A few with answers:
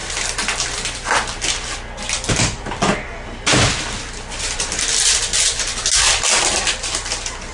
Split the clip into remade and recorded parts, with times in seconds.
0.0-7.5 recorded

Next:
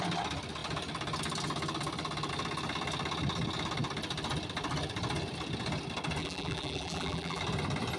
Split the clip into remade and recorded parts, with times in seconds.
0.0-6.2 recorded; 6.2-7.4 remade; 7.4-8.0 recorded

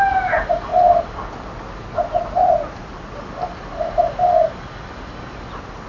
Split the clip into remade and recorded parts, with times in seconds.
0.0-5.9 recorded

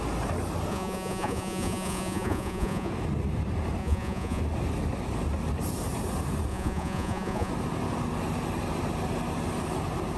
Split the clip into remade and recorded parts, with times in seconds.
0.0-0.7 recorded; 0.7-2.9 remade; 2.9-3.8 recorded; 3.8-4.4 remade; 4.4-6.5 recorded; 6.5-7.5 remade; 7.5-10.2 recorded